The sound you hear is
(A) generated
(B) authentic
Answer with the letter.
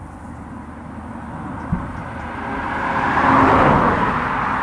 B